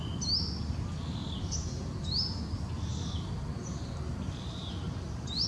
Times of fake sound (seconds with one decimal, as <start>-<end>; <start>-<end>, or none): none